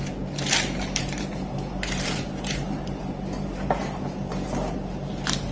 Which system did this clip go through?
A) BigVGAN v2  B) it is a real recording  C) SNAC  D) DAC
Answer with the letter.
A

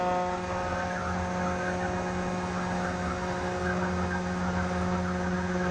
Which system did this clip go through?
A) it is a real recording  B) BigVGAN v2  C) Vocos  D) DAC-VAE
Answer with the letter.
A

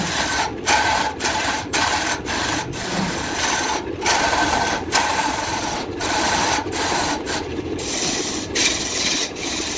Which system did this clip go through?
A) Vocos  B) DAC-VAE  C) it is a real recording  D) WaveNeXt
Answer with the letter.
C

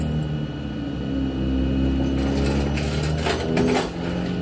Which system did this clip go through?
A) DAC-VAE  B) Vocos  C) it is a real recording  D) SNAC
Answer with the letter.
C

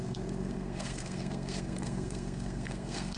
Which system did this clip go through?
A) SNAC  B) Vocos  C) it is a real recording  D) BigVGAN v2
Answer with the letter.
A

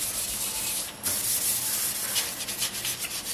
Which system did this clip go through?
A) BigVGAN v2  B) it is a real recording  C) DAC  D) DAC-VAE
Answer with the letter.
B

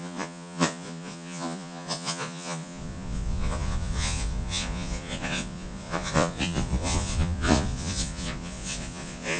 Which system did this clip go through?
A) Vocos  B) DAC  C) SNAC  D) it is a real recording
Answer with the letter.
A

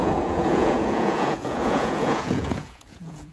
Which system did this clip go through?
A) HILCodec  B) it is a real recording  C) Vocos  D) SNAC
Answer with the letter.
C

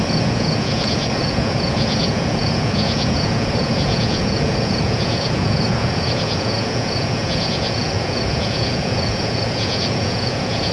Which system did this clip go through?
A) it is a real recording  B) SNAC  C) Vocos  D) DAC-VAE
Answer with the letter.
C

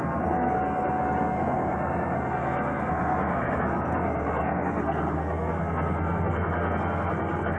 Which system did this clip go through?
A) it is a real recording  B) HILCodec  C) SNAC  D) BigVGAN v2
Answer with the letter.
C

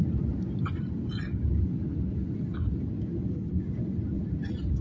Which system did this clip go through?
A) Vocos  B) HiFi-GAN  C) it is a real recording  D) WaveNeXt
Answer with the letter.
C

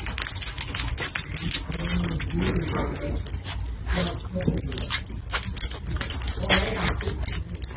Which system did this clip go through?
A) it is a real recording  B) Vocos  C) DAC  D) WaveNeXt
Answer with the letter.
A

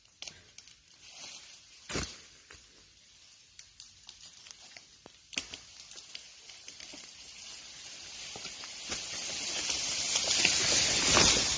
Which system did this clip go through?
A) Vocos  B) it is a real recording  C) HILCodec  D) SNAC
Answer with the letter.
B